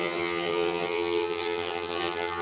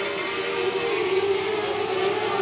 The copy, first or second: first